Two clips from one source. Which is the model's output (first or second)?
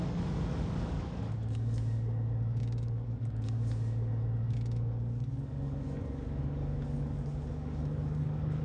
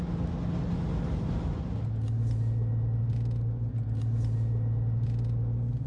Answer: first